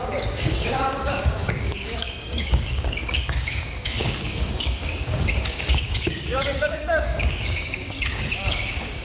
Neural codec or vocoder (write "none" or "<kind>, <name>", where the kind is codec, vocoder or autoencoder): codec, DAC